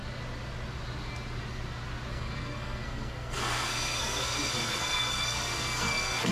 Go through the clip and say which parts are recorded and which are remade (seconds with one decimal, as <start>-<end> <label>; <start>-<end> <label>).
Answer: 0.0-2.1 recorded; 2.1-6.3 remade